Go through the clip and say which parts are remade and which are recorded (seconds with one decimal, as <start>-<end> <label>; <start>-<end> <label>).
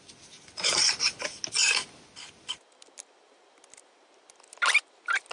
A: 0.0-5.3 recorded